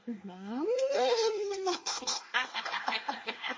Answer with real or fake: fake